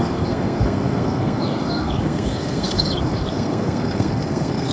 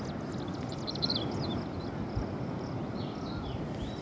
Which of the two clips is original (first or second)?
second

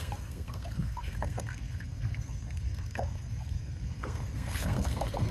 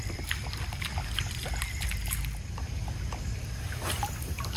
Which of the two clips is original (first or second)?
second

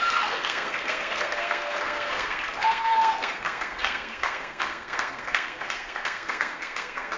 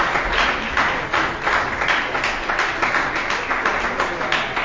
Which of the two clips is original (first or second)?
second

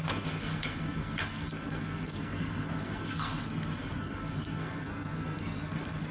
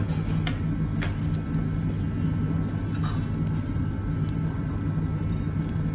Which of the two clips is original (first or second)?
second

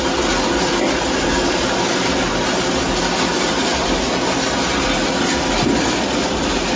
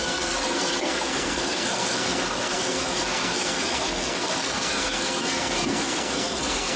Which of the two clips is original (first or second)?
first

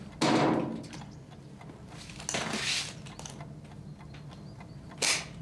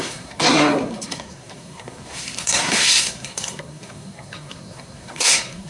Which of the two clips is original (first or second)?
first